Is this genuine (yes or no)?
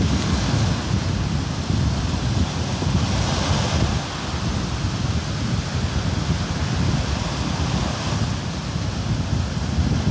yes